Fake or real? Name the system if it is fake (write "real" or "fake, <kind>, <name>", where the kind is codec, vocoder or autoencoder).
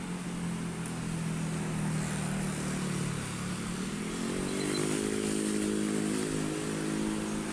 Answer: real